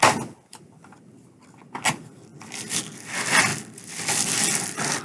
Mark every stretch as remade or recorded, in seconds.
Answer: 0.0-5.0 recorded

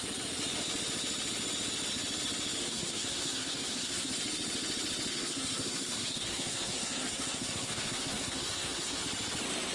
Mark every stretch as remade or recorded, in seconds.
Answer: 0.0-2.6 recorded; 2.6-4.1 remade; 4.1-5.1 recorded; 5.1-9.0 remade; 9.0-9.7 recorded

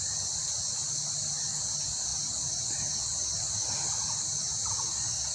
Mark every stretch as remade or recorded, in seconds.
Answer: 0.0-5.3 recorded